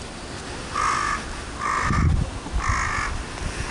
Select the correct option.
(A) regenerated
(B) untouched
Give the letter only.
B